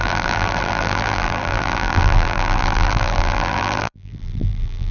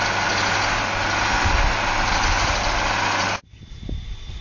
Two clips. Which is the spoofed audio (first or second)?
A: first